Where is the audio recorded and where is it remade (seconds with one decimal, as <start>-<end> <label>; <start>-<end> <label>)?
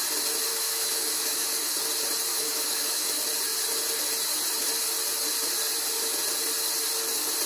0.0-0.5 recorded; 0.5-1.5 remade; 1.5-2.3 recorded; 2.3-3.1 remade; 3.1-7.5 recorded